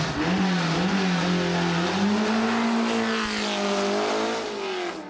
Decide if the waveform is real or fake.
real